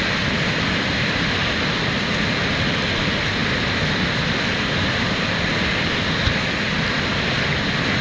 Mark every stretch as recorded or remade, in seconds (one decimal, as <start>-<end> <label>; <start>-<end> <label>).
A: 0.0-8.0 recorded